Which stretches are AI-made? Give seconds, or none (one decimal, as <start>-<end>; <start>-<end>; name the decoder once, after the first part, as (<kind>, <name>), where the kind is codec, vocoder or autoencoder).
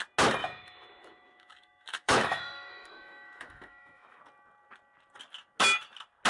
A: 0.4-4.2 (autoencoder, DAC-VAE)